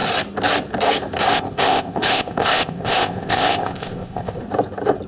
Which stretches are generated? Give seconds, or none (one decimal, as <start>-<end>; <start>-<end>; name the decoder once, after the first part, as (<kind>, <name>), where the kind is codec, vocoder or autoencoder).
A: 1.3-4.4 (codec, ZipCodec)